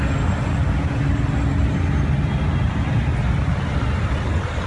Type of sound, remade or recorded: recorded